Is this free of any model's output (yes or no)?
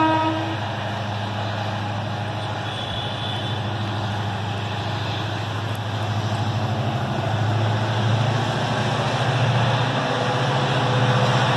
yes